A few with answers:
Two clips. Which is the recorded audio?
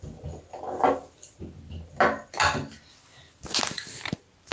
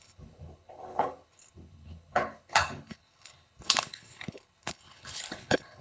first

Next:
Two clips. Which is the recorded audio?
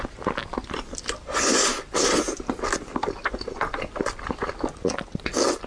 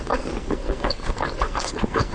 first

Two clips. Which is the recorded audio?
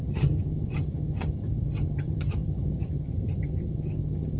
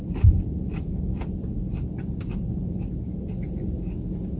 second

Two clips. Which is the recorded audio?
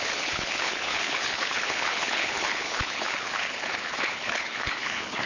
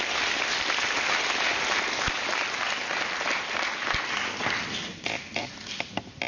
second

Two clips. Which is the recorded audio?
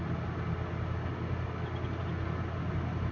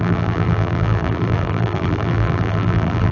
first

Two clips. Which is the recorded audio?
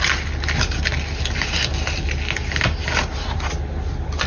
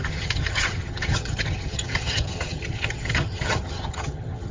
first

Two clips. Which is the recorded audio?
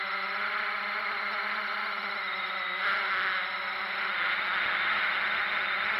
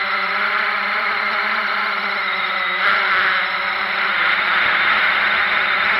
first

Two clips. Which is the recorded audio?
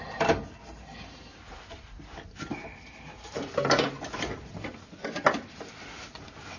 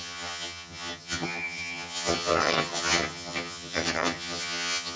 first